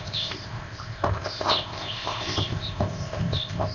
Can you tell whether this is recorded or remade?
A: remade